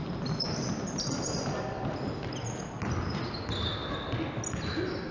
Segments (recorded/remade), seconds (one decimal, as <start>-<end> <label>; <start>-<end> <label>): 0.0-5.1 recorded